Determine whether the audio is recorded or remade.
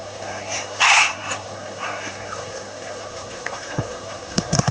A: remade